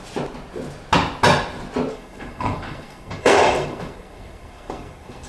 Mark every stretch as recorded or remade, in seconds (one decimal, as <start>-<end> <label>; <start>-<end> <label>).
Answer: 0.0-1.9 recorded; 1.9-5.3 remade